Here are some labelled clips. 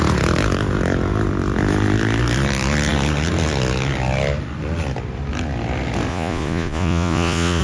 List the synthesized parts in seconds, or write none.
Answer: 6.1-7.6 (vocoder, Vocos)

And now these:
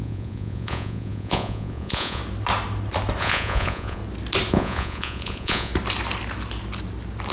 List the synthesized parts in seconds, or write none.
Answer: 0.0-2.2 (vocoder, Vocos); 3.2-4.0; 4.5-5.7